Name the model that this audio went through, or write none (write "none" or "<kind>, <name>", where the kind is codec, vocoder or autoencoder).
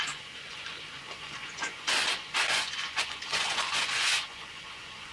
vocoder, Vocos